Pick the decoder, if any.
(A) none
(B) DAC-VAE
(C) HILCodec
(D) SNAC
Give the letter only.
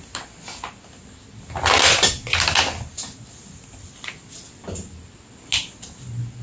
A